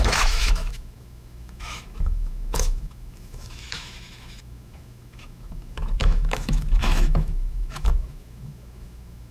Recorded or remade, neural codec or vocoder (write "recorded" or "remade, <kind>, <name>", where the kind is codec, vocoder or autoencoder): remade, autoencoder, DAC-VAE